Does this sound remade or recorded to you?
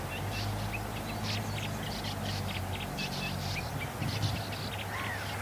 recorded